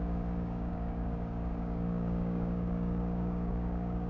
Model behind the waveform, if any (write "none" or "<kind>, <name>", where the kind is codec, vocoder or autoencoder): codec, DAC